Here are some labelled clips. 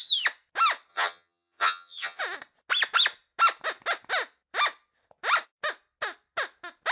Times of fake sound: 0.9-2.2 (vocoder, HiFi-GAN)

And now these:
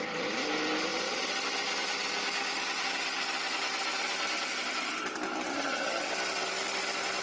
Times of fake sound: 5.5-6.1 (vocoder, HiFi-GAN)

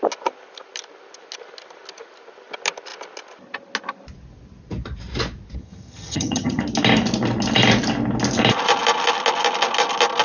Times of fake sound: 5.6-6.6 (vocoder, HiFi-GAN)

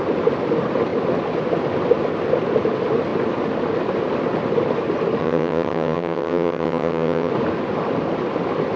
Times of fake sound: 5.2-7.3 (vocoder, HiFi-GAN)

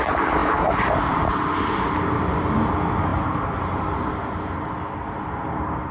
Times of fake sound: none

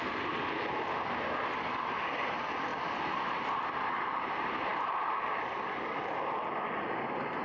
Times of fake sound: none

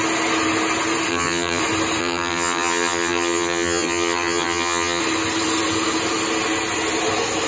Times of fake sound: 1.1-1.6 (vocoder, HiFi-GAN); 2.0-5.0